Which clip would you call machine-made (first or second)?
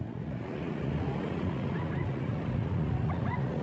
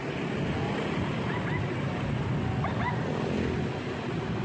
first